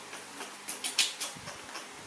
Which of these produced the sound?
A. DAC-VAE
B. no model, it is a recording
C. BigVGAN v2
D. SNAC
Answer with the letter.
B